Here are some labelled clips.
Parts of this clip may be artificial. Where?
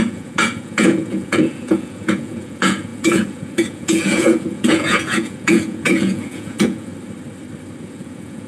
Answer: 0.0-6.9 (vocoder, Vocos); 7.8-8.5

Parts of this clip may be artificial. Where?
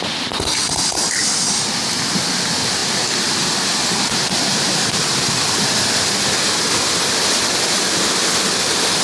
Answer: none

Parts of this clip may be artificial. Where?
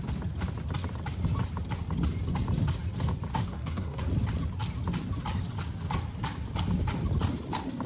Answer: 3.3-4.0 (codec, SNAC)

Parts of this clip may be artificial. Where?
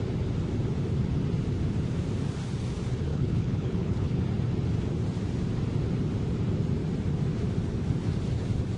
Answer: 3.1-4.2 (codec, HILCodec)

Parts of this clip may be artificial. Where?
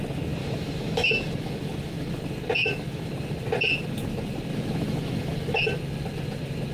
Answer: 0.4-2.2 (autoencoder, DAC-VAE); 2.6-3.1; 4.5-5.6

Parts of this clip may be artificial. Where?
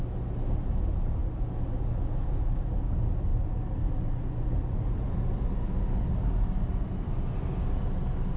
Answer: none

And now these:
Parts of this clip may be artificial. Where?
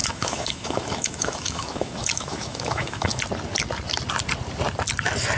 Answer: 0.0-3.2 (autoencoder, DAC-VAE)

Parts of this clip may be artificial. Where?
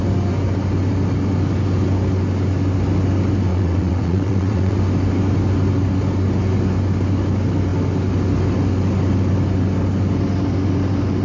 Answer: 3.5-4.8 (vocoder, WaveNeXt)